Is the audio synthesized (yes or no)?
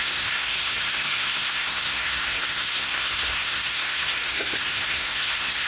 yes